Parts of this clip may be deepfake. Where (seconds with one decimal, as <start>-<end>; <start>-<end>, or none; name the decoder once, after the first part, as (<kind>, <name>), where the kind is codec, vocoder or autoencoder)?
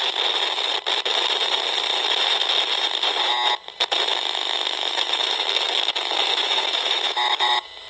4.1-7.9 (autoencoder, DAC-VAE)